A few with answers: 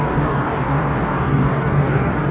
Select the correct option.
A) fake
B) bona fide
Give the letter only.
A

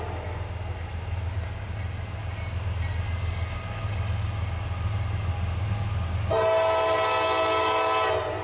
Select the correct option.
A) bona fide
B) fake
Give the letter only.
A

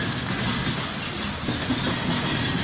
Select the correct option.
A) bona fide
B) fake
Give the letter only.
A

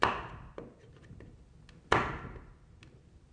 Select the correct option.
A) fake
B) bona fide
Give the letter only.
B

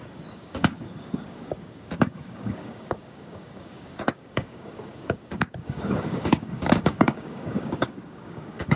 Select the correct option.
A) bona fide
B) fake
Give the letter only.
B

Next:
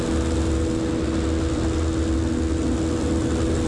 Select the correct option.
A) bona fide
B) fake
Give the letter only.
A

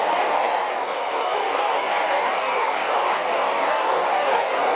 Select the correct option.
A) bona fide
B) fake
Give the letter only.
B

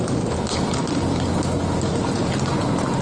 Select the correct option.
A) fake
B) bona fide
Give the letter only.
B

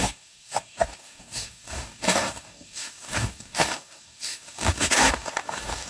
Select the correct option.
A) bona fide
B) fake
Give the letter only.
B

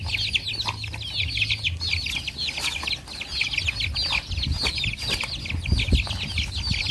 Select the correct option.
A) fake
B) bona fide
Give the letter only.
B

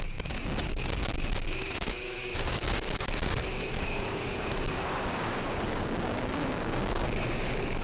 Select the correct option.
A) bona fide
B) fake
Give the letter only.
B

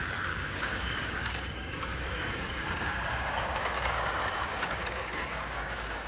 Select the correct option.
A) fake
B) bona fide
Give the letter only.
A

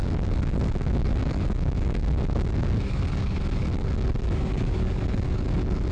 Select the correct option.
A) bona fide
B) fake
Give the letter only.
B